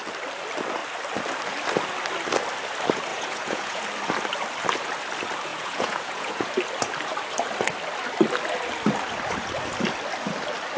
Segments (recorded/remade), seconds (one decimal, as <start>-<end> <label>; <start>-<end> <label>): 0.0-3.1 recorded; 3.1-3.8 remade; 3.8-5.5 recorded; 5.5-6.5 remade; 6.5-10.8 recorded

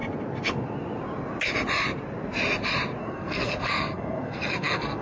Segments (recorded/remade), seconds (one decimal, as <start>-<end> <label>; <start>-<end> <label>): 0.0-3.0 recorded; 3.0-5.0 remade

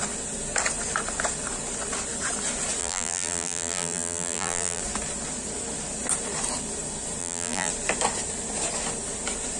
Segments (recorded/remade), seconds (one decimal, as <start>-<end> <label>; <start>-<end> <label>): 0.0-2.8 recorded; 2.8-4.8 remade; 4.8-7.2 recorded; 7.2-7.7 remade; 7.7-9.6 recorded